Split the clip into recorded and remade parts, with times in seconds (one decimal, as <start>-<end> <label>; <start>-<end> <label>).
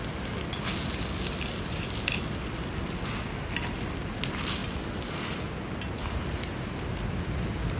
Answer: 0.0-7.8 recorded